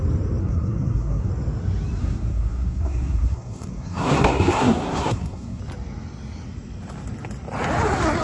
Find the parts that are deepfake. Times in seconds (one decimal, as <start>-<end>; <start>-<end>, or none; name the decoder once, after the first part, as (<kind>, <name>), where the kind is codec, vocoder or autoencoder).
0.4-1.3 (codec, SNAC); 2.0-5.6